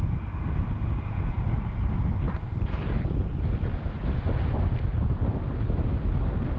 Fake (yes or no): no